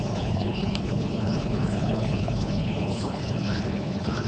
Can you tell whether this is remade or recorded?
remade